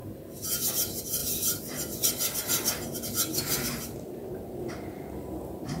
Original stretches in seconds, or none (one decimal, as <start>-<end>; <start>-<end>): 0.0-5.8